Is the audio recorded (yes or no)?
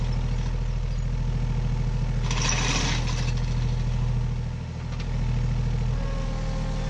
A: yes